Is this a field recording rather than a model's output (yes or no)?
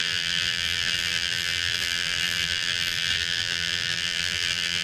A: no